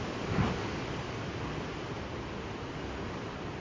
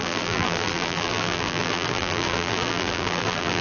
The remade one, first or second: second